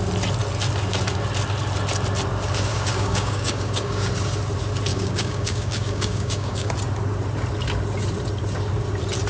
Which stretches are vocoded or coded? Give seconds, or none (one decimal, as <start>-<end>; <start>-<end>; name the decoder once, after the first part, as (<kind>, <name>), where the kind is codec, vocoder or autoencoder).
2.7-4.1 (codec, DAC); 4.9-6.7